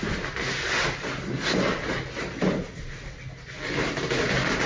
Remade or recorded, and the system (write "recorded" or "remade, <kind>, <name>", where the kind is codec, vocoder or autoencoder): recorded